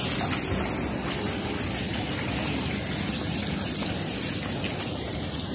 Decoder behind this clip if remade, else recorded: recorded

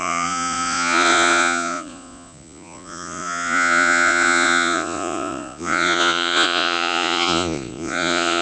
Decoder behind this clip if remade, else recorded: remade, vocoder, Vocos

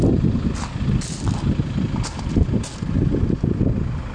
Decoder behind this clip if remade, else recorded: recorded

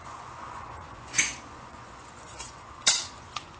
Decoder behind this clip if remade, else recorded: remade, vocoder, Vocos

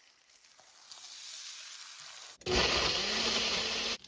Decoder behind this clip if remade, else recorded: recorded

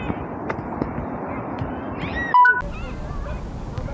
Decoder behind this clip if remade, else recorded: recorded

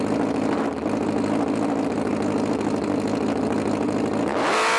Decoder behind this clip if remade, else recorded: recorded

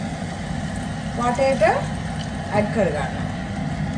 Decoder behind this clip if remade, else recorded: recorded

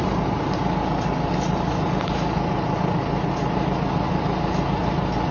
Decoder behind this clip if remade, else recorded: recorded